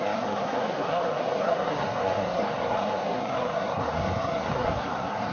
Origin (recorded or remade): remade